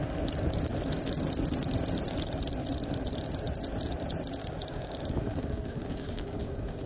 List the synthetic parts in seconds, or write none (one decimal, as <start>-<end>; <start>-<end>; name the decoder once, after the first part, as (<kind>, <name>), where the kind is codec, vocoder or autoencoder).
4.4-6.9 (codec, DAC)